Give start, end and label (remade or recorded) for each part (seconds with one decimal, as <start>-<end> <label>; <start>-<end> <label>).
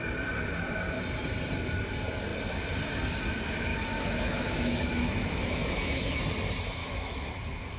0.0-3.7 recorded; 3.7-6.2 remade; 6.2-6.8 recorded; 6.8-7.8 remade